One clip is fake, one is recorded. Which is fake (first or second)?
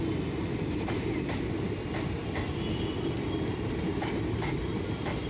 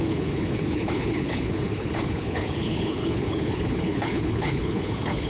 second